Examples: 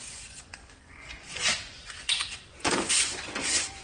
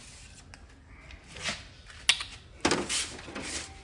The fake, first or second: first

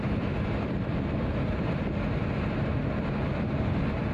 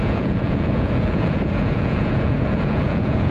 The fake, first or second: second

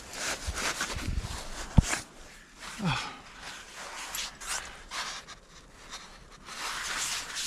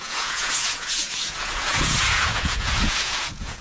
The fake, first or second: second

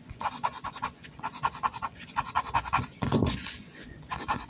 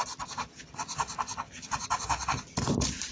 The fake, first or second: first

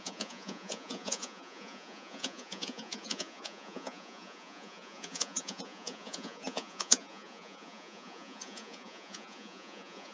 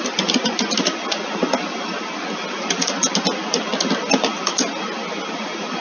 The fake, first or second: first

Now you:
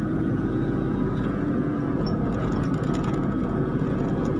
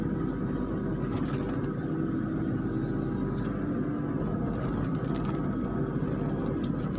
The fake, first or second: first